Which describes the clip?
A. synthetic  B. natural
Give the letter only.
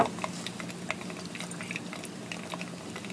B